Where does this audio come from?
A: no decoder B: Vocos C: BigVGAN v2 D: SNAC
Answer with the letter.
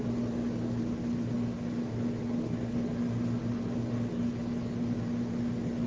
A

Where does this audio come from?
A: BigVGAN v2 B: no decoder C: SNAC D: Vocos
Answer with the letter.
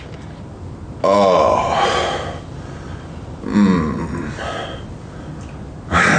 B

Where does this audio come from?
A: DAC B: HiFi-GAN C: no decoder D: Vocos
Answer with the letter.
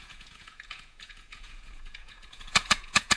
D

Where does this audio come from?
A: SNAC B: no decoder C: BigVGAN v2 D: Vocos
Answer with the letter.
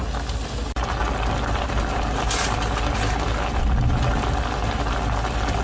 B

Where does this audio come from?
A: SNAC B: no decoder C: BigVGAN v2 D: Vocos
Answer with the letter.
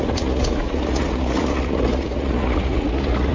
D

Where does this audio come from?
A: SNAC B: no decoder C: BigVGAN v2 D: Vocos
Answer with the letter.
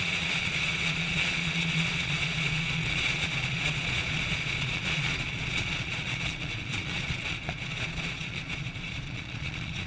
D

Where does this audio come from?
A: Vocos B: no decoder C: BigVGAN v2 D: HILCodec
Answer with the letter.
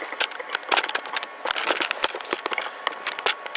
B